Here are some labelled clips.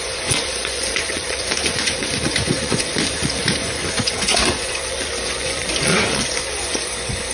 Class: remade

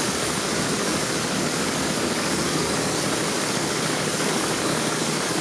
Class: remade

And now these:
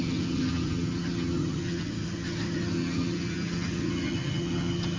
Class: remade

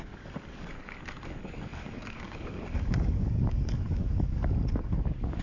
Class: remade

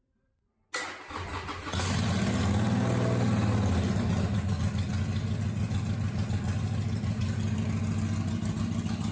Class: recorded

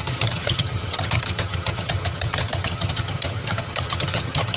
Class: remade